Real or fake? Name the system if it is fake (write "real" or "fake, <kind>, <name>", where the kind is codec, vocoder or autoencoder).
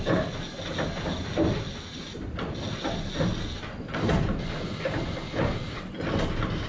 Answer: real